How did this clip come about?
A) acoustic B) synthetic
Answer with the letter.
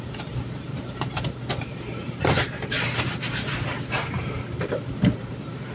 B